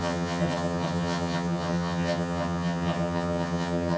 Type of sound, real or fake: fake